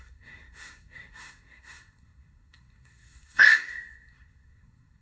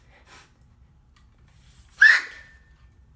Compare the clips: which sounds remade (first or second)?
first